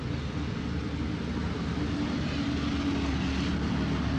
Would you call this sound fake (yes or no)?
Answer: no